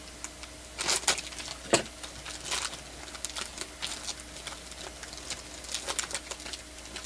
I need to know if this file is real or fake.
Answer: real